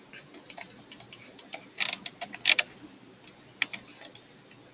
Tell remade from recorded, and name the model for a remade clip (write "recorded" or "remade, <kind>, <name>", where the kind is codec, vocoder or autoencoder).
recorded